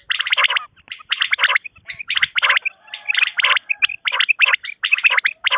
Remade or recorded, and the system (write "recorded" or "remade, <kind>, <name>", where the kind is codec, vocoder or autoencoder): recorded